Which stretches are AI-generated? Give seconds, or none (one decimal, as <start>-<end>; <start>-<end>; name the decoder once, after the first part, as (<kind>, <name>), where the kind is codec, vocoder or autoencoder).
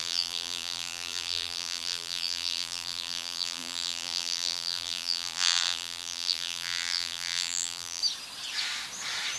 0.0-8.0 (vocoder, BigVGAN v2)